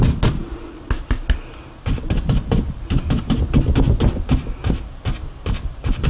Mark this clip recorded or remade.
recorded